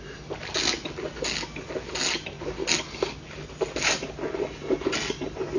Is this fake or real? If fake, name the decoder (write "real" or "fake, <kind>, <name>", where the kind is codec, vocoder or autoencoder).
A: real